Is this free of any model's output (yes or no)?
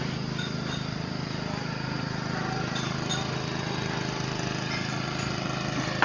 yes